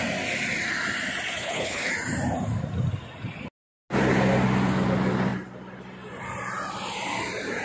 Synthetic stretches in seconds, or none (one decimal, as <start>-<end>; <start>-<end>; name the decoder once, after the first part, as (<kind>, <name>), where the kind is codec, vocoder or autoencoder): 1.4-1.9 (codec, HILCodec)